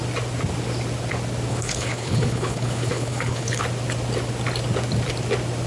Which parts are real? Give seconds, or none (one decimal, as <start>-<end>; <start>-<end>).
0.0-1.5; 3.6-5.7